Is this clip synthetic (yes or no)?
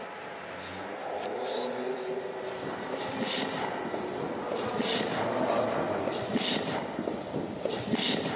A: no